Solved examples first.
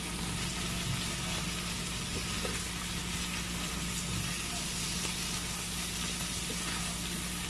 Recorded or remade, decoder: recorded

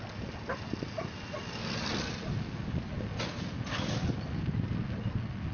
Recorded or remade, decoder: recorded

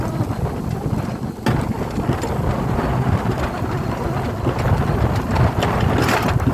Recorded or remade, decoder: recorded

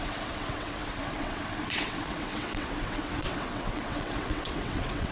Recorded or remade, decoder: remade, vocoder, WaveNeXt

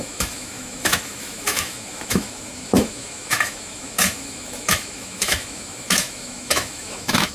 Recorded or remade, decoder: remade, autoencoder, DAC-VAE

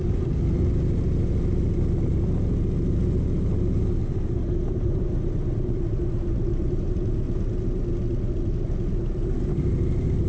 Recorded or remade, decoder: recorded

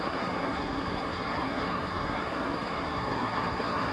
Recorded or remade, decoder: remade, codec, SNAC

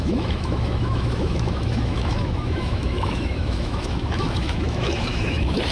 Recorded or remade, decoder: remade, autoencoder, DAC-VAE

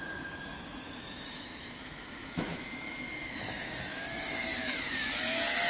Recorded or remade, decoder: remade, autoencoder, DAC-VAE